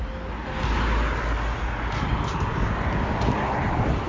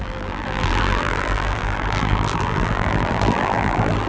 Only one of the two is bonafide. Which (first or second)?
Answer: first